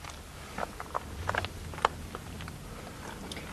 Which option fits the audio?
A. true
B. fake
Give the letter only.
A